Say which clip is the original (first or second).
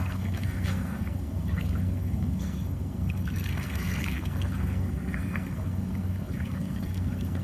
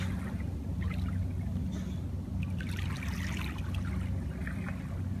second